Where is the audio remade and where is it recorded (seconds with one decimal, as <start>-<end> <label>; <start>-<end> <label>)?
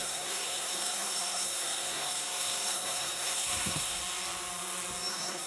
0.0-4.0 remade; 4.0-5.1 recorded; 5.1-5.5 remade